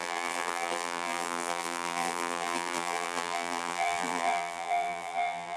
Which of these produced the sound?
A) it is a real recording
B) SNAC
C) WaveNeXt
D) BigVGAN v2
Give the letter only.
D